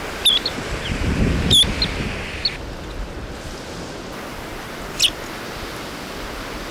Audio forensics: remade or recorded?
recorded